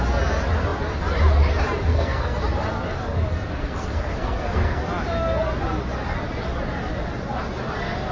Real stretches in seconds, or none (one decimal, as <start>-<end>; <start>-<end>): 0.0-1.9; 2.4-3.6; 4.8-8.1